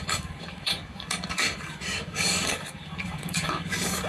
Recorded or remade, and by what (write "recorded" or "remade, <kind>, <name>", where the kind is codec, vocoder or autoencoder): remade, codec, DAC